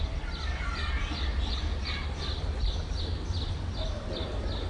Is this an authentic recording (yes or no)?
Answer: yes